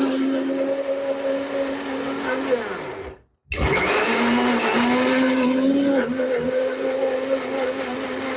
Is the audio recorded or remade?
recorded